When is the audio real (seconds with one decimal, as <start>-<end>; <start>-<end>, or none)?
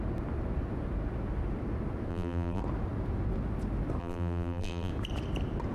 0.0-2.1; 2.6-4.0; 4.9-5.7